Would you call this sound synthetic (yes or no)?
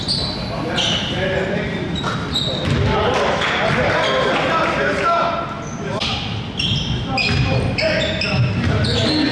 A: no